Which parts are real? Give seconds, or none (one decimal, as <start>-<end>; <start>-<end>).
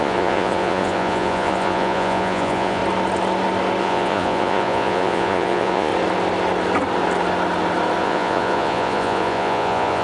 2.8-3.8; 5.9-8.0